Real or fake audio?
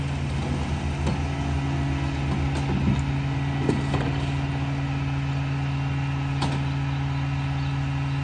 real